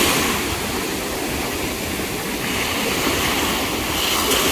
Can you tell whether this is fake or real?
real